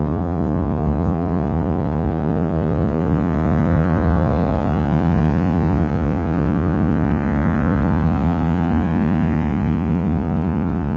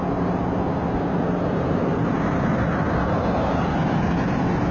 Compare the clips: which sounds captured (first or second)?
second